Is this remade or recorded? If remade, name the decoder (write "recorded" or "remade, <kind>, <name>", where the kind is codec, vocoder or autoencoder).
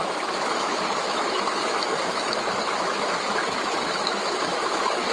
remade, autoencoder, DAC-VAE